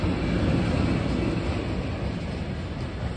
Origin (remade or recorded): recorded